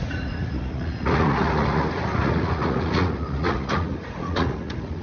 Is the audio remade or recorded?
remade